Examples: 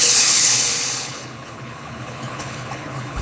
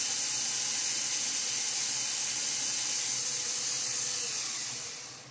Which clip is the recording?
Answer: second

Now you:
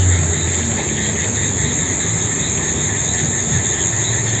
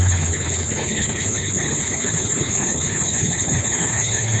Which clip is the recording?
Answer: first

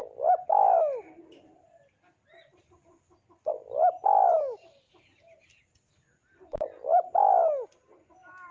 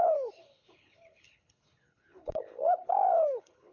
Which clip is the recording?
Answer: first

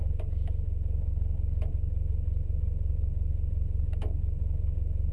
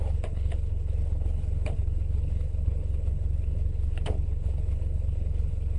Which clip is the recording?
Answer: first